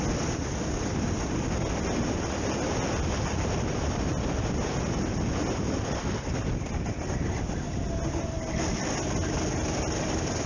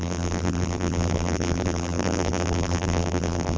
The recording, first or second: first